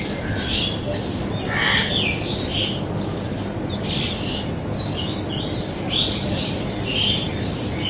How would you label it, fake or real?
real